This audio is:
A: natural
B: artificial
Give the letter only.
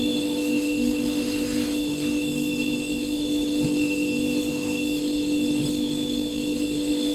B